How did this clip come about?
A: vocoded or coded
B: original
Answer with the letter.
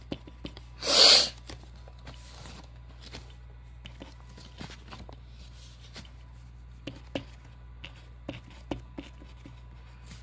B